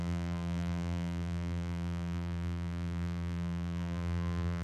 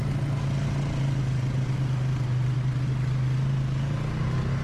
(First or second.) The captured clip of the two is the second